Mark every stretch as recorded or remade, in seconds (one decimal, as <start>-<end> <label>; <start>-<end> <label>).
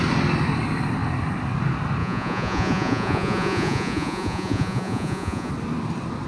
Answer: 0.0-2.0 recorded; 2.0-5.5 remade; 5.5-6.3 recorded